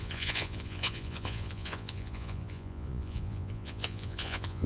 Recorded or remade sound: remade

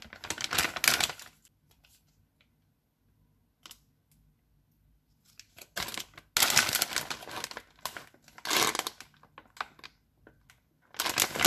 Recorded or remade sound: recorded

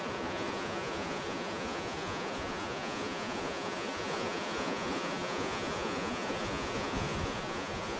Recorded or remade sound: remade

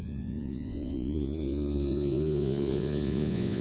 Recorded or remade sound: remade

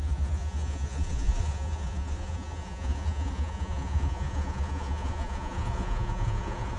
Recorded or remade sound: remade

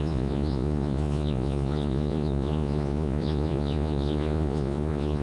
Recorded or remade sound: remade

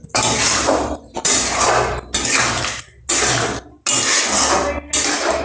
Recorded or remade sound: recorded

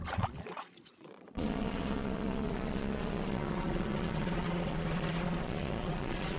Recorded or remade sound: remade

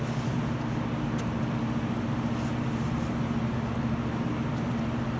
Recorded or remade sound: recorded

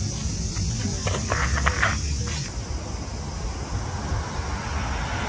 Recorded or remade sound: recorded